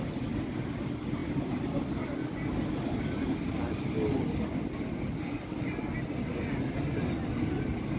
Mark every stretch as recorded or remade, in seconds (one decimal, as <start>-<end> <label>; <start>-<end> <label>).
0.0-8.0 recorded